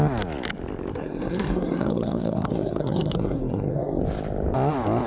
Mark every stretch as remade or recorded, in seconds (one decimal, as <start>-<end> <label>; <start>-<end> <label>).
0.0-0.9 recorded; 0.9-4.0 remade; 4.0-5.1 recorded